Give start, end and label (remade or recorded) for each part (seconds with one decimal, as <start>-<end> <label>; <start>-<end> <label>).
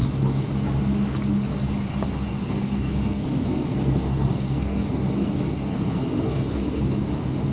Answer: 0.0-2.3 recorded; 2.3-6.8 remade; 6.8-7.5 recorded